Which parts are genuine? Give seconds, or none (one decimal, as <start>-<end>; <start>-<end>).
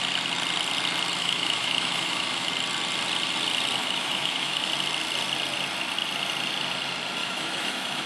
0.0-1.2; 2.5-3.8; 4.7-7.2